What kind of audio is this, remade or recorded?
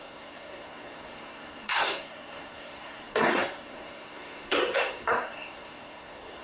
remade